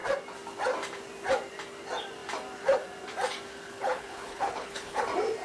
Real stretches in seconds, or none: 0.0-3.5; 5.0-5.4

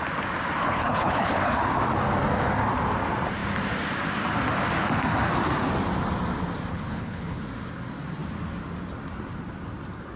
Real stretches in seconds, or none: 0.0-0.6; 1.6-6.7; 7.4-10.2

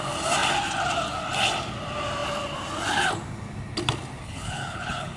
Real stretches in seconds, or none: 0.0-4.2

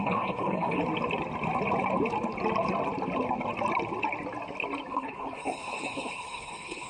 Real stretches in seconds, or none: 0.8-4.9

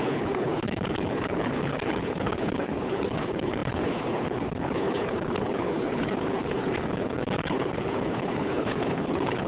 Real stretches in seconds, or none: none

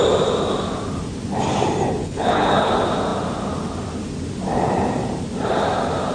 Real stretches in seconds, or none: 0.0-2.0; 2.7-6.1

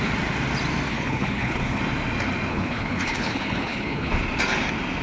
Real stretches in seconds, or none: 0.0-0.9; 1.8-2.5; 4.1-5.0